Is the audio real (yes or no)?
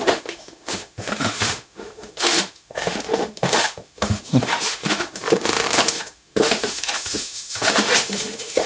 no